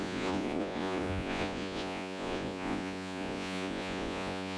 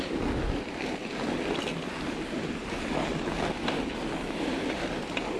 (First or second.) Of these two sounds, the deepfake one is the first